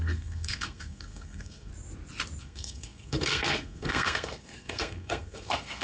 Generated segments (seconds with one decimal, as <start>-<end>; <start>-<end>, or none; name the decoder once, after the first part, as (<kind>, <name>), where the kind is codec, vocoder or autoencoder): 0.0-1.7 (codec, SNAC); 2.4-5.8